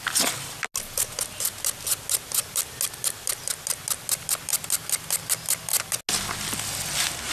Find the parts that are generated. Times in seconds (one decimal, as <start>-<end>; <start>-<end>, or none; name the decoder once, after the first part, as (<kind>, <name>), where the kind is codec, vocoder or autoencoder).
none

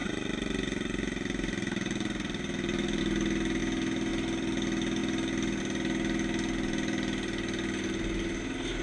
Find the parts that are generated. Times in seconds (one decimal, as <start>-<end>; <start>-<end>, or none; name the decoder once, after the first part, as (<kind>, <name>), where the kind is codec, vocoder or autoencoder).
0.0-3.0 (vocoder, BigVGAN v2)

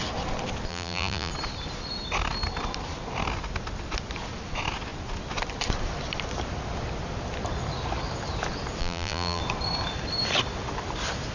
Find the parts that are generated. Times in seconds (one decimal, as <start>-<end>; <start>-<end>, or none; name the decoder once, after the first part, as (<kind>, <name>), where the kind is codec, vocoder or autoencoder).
0.7-1.3 (vocoder, BigVGAN v2); 8.8-9.4